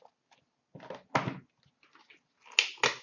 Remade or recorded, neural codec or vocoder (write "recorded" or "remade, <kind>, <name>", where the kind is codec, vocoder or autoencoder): recorded